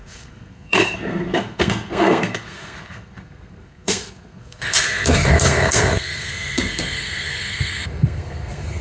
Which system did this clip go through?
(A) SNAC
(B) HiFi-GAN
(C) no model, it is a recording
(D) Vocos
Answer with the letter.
A